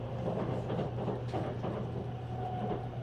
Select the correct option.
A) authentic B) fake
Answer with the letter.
A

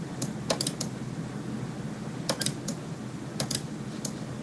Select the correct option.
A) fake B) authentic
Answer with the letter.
B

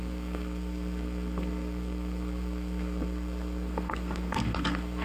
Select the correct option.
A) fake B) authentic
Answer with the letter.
A